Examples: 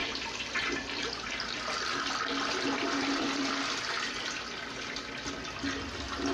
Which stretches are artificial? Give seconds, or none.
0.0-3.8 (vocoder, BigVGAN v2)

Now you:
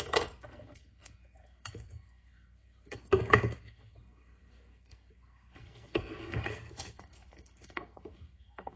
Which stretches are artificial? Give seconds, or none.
0.0-8.8 (codec, SNAC)